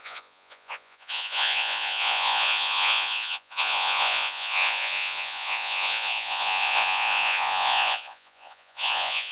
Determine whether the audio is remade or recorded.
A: remade